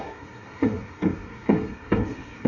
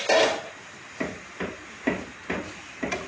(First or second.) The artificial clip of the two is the first